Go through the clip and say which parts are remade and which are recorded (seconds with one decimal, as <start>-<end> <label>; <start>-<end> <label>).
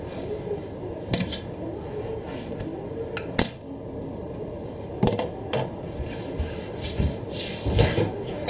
0.0-8.5 recorded